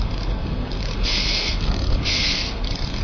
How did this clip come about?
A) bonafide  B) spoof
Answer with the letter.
B